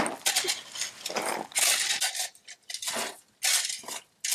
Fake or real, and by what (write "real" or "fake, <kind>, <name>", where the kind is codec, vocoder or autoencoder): real